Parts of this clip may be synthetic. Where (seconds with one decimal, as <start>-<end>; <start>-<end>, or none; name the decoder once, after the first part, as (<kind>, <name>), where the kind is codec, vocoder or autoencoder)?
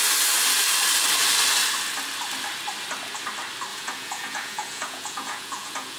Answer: 3.7-6.0 (vocoder, Vocos)